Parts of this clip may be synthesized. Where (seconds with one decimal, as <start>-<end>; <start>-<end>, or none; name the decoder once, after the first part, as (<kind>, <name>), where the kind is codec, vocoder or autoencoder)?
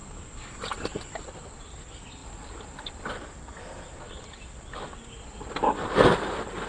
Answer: 0.0-0.5 (codec, DAC)